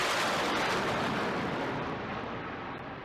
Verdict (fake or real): real